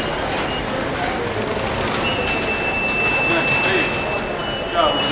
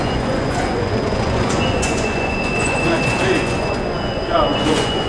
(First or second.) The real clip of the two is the first